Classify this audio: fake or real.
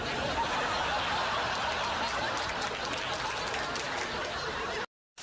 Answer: real